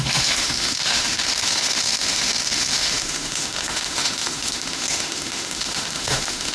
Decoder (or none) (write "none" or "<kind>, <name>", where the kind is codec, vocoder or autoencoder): autoencoder, DAC-VAE